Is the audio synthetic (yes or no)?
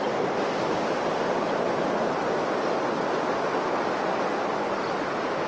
no